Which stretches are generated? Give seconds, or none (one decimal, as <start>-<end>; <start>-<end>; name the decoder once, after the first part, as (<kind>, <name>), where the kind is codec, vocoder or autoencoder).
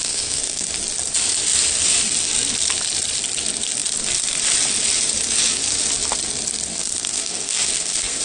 0.0-0.7 (codec, SNAC); 6.7-8.2